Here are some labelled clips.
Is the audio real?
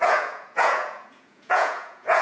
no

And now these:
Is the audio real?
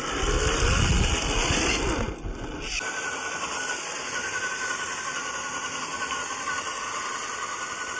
yes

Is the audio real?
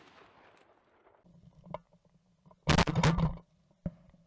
yes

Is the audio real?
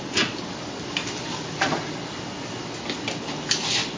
yes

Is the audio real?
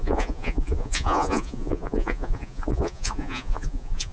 no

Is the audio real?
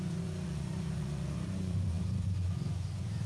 no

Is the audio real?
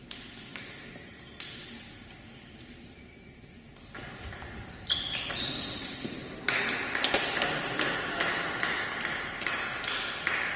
yes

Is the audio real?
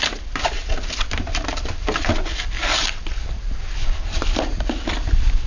yes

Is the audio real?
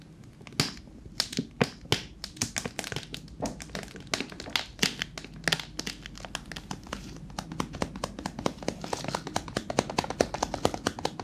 yes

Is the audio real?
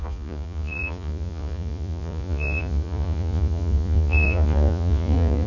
no